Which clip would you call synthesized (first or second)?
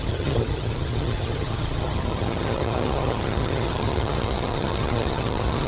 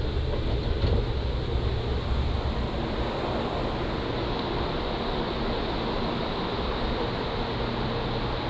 first